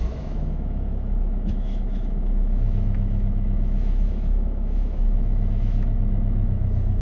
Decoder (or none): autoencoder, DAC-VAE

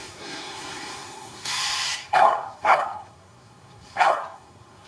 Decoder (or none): codec, SNAC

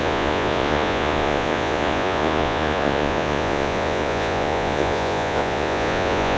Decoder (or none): vocoder, Vocos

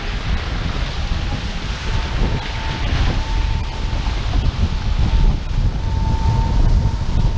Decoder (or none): none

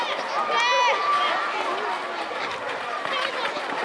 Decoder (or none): none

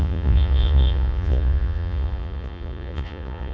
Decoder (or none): vocoder, Vocos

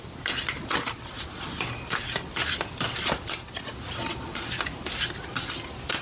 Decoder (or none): none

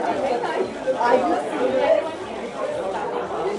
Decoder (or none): none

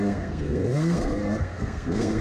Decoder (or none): codec, SNAC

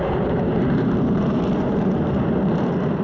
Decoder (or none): vocoder, BigVGAN v2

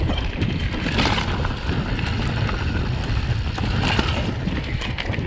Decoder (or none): none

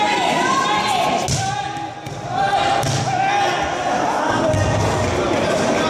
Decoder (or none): none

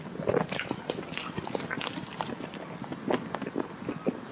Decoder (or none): none